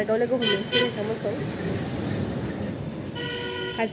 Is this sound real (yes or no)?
yes